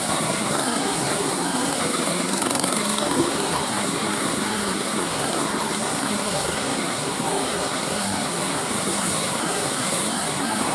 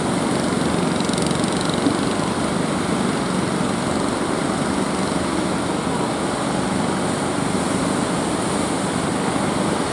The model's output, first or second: first